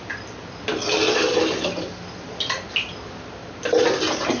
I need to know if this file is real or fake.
real